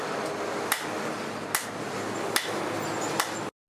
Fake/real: real